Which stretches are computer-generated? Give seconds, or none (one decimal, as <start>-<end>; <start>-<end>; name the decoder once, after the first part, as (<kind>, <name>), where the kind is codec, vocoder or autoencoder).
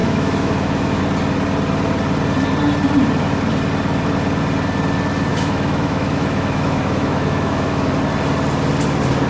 0.0-1.0 (autoencoder, DAC-VAE); 5.3-7.9